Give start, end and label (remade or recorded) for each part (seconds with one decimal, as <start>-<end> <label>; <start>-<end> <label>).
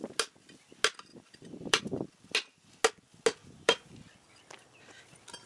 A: 0.0-1.1 recorded; 1.1-1.8 remade; 1.8-3.4 recorded; 3.4-3.9 remade; 3.9-5.5 recorded